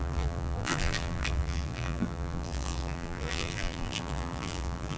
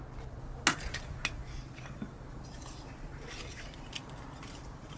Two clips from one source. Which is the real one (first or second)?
second